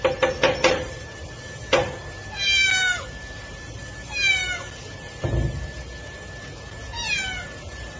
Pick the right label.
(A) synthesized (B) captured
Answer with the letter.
B